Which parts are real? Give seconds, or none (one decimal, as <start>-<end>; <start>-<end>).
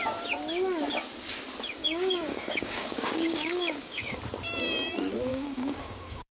0.0-1.8; 4.2-5.3